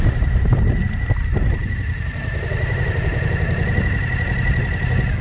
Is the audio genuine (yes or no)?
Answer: yes